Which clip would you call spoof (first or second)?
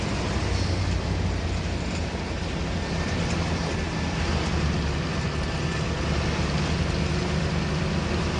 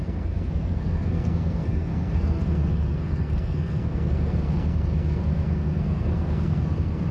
second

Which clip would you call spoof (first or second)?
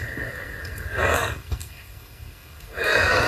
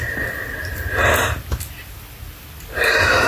first